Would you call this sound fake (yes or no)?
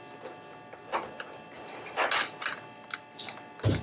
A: no